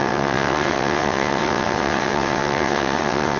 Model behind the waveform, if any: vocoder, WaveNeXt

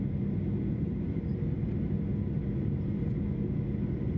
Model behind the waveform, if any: none